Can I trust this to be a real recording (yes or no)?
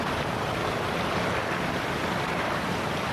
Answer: yes